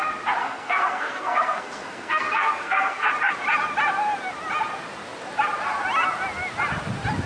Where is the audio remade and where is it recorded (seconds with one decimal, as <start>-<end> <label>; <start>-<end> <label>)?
0.0-0.4 recorded; 0.4-3.1 remade; 3.1-7.3 recorded